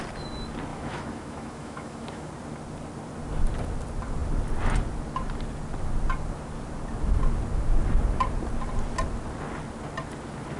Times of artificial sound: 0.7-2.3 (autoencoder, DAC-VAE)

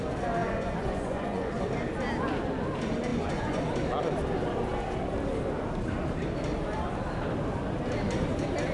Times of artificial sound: 0.4-1.6 (vocoder, Vocos); 3.1-3.6

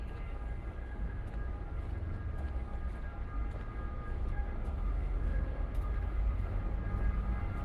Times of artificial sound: 0.8-1.3 (autoencoder, DAC-VAE); 4.2-6.6

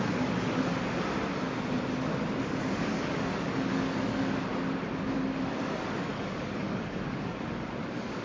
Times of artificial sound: 0.0-0.7 (codec, DAC); 2.4-4.5; 5.1-8.2